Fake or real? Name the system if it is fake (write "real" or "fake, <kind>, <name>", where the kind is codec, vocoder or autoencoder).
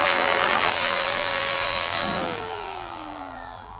fake, vocoder, BigVGAN v2